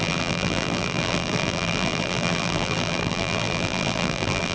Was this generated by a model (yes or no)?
yes